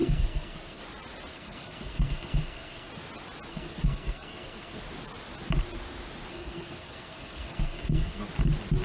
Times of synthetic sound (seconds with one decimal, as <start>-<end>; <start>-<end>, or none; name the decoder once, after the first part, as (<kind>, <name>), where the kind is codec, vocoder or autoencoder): 0.0-0.8 (codec, SNAC); 1.3-2.9; 3.5-4.8; 6.3-8.2